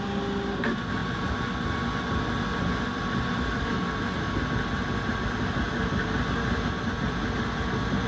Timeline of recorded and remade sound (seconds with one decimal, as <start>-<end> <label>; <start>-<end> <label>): 0.0-8.1 recorded